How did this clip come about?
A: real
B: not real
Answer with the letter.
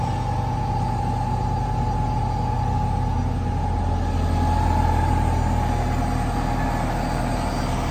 A